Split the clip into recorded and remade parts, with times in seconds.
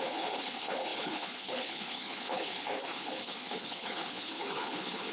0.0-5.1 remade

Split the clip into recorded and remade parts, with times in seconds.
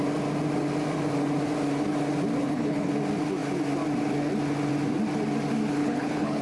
0.0-2.4 recorded; 2.4-2.9 remade; 2.9-5.8 recorded; 5.8-6.4 remade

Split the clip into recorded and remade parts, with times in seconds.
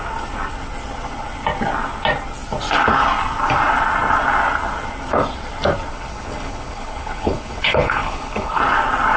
0.0-5.9 recorded; 5.9-8.6 remade; 8.6-9.2 recorded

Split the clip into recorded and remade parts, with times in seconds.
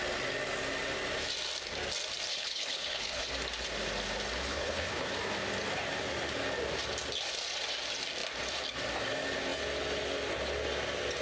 0.0-2.3 recorded; 2.3-3.3 remade; 3.3-4.5 recorded; 4.5-5.1 remade; 5.1-11.2 recorded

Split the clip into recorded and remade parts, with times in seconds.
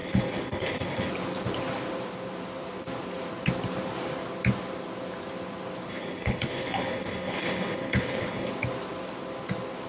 0.0-1.1 remade; 1.1-5.9 recorded; 5.9-8.5 remade; 8.5-9.9 recorded